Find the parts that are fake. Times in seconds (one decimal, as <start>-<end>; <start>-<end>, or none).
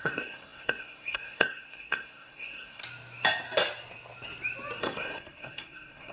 0.0-2.8; 4.8-6.1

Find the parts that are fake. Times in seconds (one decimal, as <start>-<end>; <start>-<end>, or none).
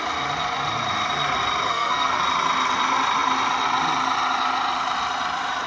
1.7-2.2